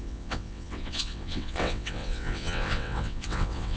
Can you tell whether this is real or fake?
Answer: fake